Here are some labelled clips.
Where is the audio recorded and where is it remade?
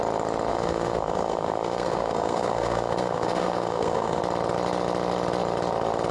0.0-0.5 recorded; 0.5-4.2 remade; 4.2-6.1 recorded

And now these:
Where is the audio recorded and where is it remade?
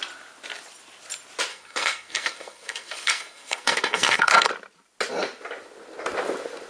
0.0-1.5 recorded; 1.5-4.5 remade; 4.5-6.7 recorded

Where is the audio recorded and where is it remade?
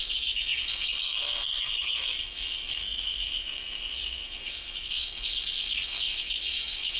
0.0-7.0 remade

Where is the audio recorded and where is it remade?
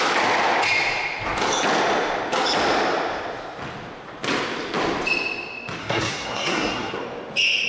0.0-5.8 recorded; 5.8-7.0 remade; 7.0-7.7 recorded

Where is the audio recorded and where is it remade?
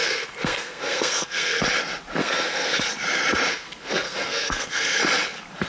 0.0-1.6 remade; 1.6-2.2 recorded; 2.2-2.8 remade; 2.8-3.5 recorded; 3.5-5.0 remade; 5.0-5.7 recorded